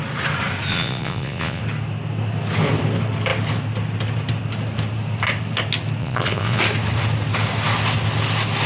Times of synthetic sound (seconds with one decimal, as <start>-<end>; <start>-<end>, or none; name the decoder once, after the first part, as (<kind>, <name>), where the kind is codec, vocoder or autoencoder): 0.7-1.6 (vocoder, Vocos); 6.0-6.6